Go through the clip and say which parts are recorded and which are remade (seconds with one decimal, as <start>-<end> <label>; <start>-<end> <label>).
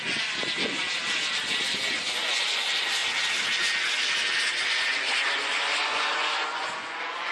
0.0-0.8 remade; 0.8-2.0 recorded; 2.0-3.0 remade; 3.0-5.3 recorded; 5.3-7.3 remade